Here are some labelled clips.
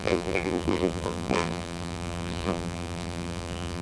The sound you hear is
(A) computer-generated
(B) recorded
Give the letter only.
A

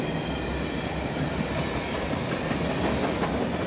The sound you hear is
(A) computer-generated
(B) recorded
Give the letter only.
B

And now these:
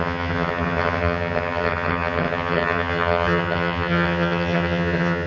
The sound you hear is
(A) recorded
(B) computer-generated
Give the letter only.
B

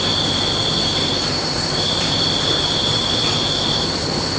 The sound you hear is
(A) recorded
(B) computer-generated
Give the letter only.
B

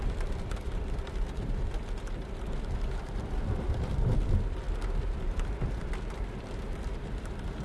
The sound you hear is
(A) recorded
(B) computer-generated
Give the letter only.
B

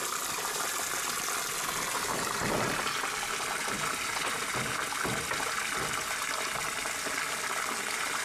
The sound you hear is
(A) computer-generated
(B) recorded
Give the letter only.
B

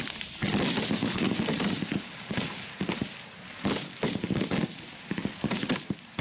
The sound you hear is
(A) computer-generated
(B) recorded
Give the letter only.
B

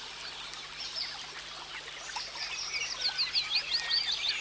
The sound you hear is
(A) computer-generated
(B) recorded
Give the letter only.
B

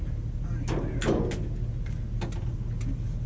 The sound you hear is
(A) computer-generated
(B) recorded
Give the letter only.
B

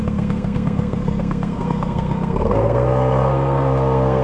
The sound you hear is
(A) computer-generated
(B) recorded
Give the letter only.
A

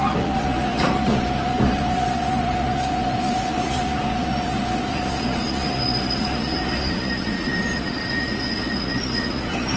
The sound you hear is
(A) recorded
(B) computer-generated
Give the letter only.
B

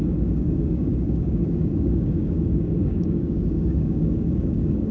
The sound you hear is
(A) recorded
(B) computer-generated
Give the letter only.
B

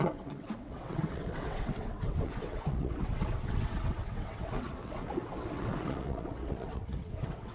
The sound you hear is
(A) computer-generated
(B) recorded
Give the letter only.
A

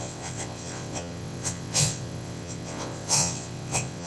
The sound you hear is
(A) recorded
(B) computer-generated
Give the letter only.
B